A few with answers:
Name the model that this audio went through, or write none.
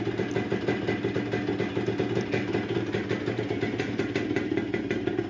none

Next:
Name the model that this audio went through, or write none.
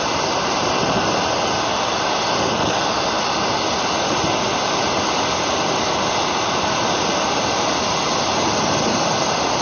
none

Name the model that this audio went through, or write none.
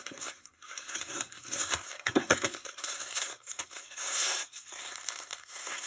codec, SNAC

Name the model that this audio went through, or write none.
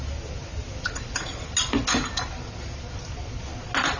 none